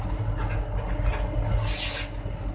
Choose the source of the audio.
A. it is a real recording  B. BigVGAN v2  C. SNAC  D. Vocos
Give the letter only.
A